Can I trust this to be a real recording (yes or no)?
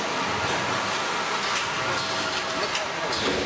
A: yes